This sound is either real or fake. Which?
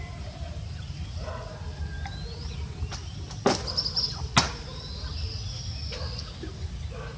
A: real